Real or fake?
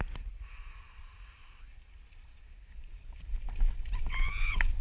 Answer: real